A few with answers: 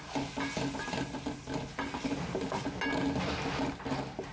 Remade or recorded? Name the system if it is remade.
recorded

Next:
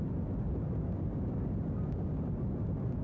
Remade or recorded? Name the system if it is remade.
recorded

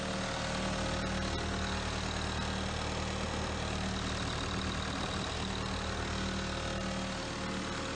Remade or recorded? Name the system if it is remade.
recorded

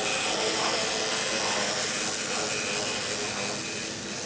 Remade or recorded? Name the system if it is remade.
recorded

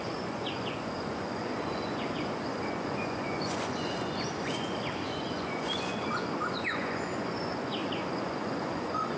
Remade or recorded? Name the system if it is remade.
remade, vocoder, Vocos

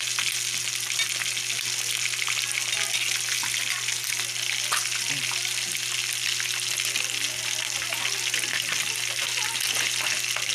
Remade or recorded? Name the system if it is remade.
recorded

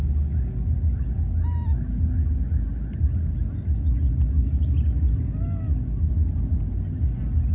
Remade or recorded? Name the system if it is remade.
recorded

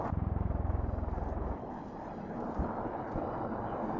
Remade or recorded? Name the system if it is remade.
recorded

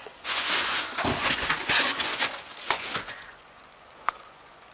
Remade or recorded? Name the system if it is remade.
remade, vocoder, Vocos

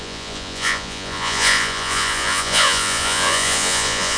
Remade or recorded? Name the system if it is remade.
remade, vocoder, Vocos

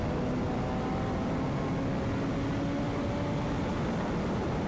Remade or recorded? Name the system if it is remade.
recorded